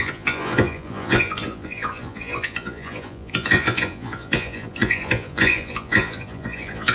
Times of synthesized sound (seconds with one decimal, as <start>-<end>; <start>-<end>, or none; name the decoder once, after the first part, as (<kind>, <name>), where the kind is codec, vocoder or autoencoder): 0.0-6.9 (vocoder, Vocos)